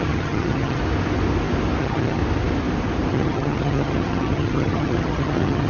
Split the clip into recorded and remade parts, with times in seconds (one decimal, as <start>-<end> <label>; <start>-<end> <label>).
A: 0.0-0.8 remade; 0.8-1.8 recorded; 1.8-2.2 remade; 2.2-3.1 recorded; 3.1-5.7 remade